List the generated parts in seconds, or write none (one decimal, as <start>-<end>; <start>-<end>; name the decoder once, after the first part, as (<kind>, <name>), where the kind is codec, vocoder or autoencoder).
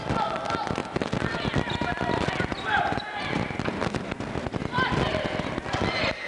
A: 0.8-4.2 (vocoder, BigVGAN v2)